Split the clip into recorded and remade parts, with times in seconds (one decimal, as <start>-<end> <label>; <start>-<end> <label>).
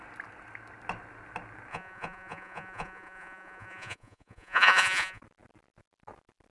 0.0-1.7 recorded; 1.7-5.2 remade; 5.2-6.5 recorded